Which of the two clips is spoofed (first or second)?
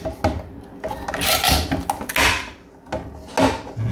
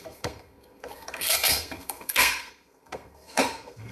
second